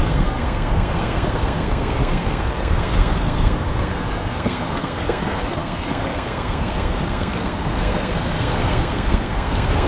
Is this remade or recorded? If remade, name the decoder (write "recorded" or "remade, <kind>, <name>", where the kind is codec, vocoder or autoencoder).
remade, codec, SNAC